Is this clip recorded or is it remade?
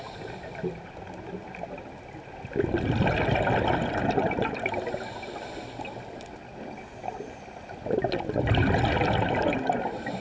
recorded